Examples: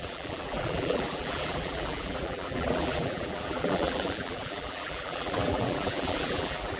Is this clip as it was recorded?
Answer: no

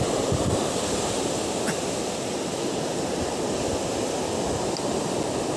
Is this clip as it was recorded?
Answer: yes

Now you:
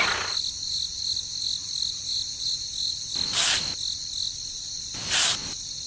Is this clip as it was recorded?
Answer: yes